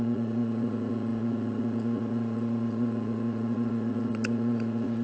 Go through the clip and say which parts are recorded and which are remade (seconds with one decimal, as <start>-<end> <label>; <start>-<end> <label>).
0.0-5.0 remade